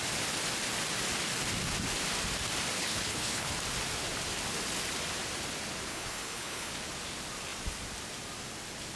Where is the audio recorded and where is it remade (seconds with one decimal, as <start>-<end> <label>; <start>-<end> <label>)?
0.0-2.8 recorded; 2.8-3.5 remade; 3.5-5.9 recorded; 5.9-6.7 remade; 6.7-9.0 recorded